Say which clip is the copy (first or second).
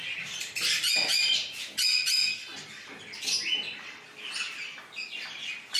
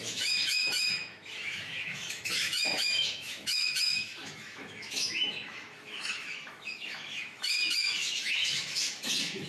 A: second